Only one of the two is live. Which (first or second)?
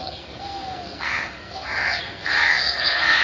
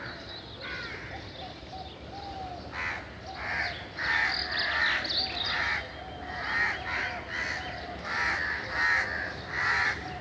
second